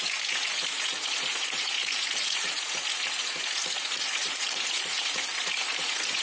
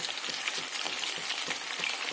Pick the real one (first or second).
second